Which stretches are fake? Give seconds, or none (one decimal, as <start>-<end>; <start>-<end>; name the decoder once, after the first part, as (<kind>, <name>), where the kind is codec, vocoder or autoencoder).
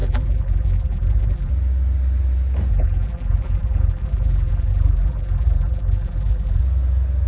0.0-1.5 (vocoder, BigVGAN v2); 2.7-6.6